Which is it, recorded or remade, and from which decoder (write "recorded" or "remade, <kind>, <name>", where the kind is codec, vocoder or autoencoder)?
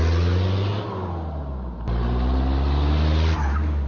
recorded